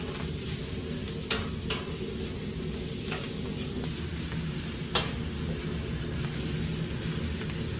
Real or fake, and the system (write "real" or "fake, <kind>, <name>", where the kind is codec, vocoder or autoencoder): real